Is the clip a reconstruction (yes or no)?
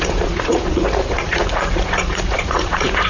yes